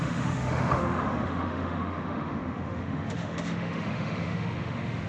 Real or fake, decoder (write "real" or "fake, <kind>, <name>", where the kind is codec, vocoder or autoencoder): fake, autoencoder, DAC-VAE